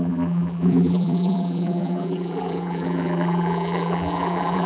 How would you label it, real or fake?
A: fake